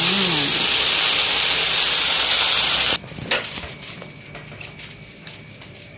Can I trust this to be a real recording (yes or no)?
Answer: yes